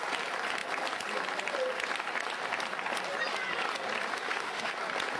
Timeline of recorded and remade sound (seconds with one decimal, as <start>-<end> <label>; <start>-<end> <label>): 0.0-4.1 recorded; 4.1-4.7 remade; 4.7-5.2 recorded